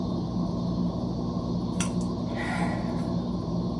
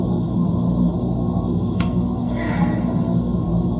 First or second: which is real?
first